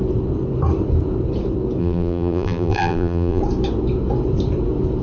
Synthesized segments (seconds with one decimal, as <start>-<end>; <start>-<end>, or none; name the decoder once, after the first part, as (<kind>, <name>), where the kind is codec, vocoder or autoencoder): 1.8-3.4 (vocoder, BigVGAN v2)